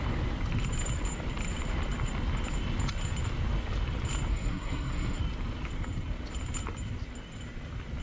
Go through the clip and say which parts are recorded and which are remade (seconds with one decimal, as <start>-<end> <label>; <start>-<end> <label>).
0.0-4.3 recorded; 4.3-5.2 remade; 5.2-8.0 recorded